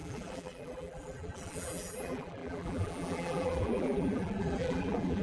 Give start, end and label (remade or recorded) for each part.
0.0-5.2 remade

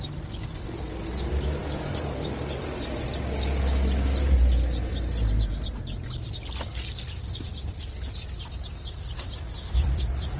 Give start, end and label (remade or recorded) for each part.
0.0-7.5 recorded; 7.5-10.4 remade

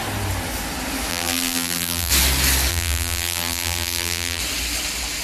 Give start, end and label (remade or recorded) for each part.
0.0-1.1 recorded; 1.1-2.1 remade; 2.1-2.7 recorded; 2.7-4.4 remade; 4.4-5.2 recorded

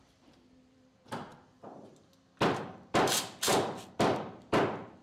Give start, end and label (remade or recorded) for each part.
0.0-1.3 remade; 1.3-2.5 recorded; 2.5-5.0 remade

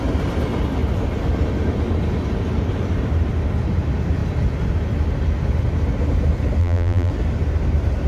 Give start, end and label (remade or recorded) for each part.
0.0-6.6 recorded; 6.6-7.1 remade; 7.1-8.1 recorded

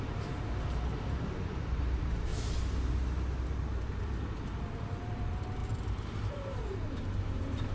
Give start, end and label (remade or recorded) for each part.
0.0-2.3 remade; 2.3-3.6 recorded; 3.6-7.7 remade

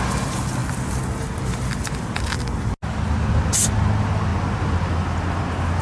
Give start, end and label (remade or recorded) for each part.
0.0-5.8 recorded

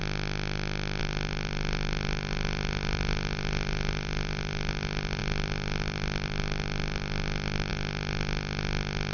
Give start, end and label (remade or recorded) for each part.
0.0-1.0 recorded; 1.0-9.1 remade